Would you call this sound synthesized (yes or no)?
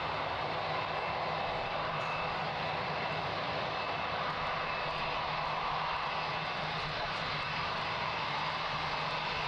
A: no